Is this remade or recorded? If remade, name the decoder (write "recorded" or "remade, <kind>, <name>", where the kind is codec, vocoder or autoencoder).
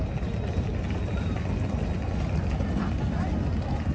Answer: recorded